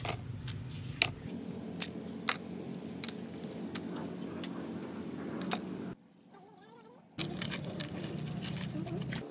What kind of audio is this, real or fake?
real